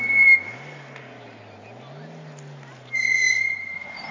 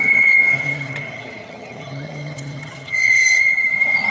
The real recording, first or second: first